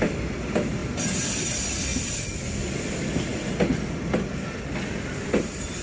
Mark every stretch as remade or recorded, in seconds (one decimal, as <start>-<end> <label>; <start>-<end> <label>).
0.0-5.8 recorded